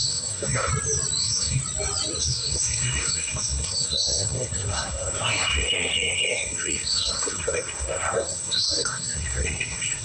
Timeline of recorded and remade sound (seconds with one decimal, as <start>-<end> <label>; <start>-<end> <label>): 0.0-0.7 remade; 0.7-1.2 recorded; 1.2-1.6 remade; 1.6-2.2 recorded; 2.2-10.0 remade